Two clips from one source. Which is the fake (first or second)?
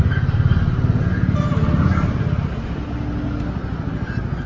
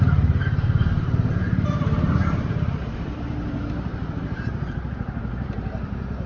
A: second